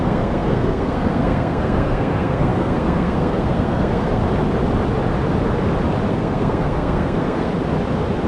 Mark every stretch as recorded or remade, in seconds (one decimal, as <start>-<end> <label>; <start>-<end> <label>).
0.0-4.2 remade; 4.2-6.1 recorded; 6.1-7.5 remade; 7.5-8.3 recorded